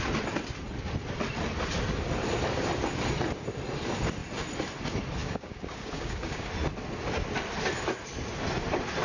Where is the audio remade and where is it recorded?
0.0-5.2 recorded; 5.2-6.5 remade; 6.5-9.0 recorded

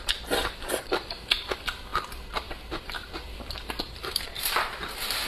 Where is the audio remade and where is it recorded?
0.0-5.3 remade

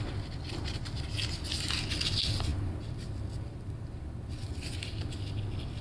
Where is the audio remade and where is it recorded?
0.0-5.8 recorded

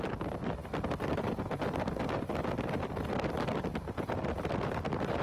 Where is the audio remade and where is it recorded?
0.0-5.2 recorded